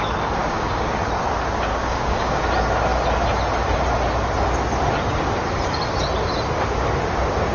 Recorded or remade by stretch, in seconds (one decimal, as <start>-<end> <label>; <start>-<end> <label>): 0.0-0.4 recorded; 0.4-0.9 remade; 0.9-1.7 recorded; 1.7-2.4 remade; 2.4-7.5 recorded